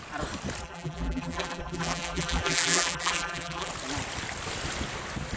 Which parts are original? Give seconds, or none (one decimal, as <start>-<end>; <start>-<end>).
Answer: 0.0-0.6; 3.7-5.4